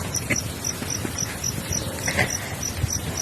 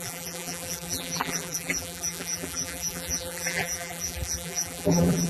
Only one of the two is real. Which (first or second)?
first